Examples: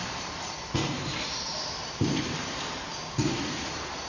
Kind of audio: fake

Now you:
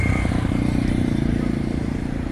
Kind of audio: fake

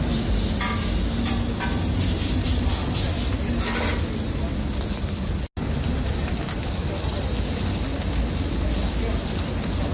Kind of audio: real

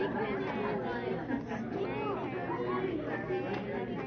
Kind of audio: real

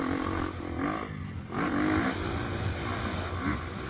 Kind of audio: real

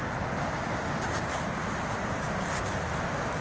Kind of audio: real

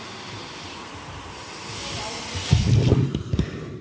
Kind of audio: fake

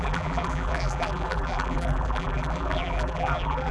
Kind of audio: fake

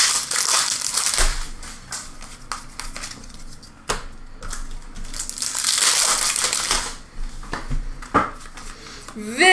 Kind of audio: real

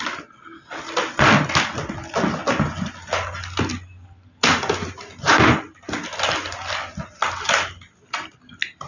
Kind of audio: real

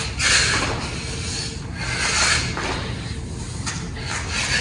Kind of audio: real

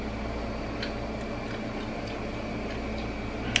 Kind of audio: real